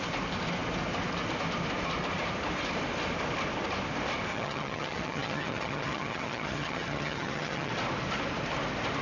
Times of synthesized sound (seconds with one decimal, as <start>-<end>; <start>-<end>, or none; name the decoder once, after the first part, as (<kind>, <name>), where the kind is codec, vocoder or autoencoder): 4.3-7.7 (vocoder, HiFi-GAN)